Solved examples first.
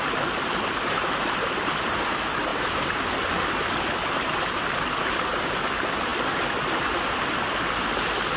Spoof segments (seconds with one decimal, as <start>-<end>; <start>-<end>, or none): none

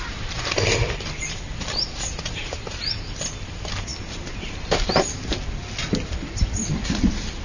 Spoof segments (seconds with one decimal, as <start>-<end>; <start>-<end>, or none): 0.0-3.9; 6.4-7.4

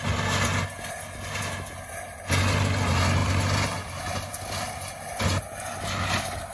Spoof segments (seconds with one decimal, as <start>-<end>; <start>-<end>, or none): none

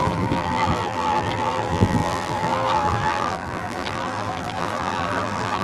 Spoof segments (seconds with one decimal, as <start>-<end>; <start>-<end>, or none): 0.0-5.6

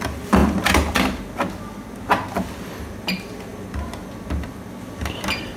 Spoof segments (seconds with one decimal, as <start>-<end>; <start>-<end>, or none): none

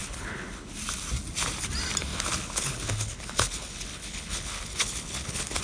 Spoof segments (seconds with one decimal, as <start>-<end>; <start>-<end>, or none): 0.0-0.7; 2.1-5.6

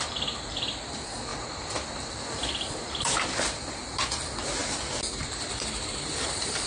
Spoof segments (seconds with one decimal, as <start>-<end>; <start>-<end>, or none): 0.0-1.3; 2.0-6.7

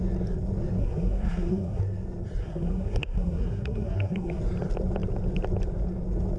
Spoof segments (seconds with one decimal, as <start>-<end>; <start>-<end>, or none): 0.8-1.8; 2.4-4.4